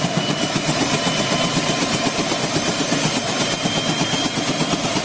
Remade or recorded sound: recorded